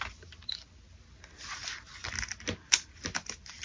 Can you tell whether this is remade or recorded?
recorded